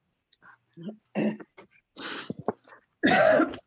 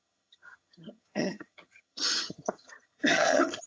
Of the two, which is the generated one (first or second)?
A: second